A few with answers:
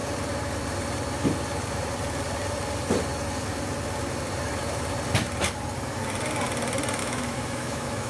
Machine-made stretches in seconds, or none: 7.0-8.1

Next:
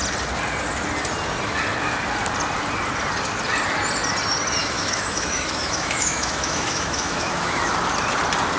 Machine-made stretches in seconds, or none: 4.6-7.7

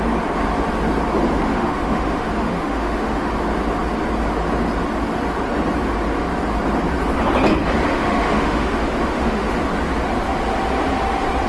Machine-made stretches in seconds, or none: 1.4-3.3; 7.9-9.5

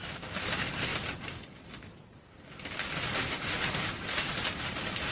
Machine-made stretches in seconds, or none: none

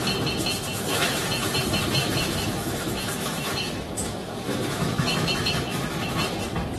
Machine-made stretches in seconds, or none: 0.7-1.2; 2.0-6.1

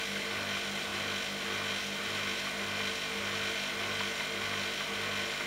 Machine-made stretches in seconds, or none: none

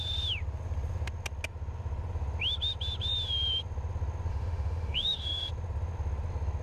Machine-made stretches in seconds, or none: 4.3-5.5